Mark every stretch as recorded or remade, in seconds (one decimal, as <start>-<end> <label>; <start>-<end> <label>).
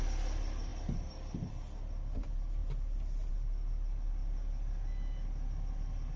0.0-6.2 recorded